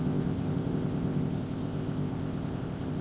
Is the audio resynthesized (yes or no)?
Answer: yes